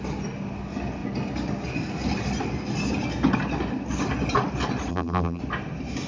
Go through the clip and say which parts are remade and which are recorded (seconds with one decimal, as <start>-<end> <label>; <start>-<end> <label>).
0.0-4.9 recorded; 4.9-5.4 remade; 5.4-6.1 recorded